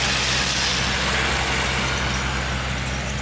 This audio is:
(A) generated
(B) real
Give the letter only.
B